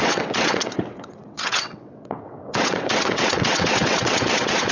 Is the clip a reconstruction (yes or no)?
yes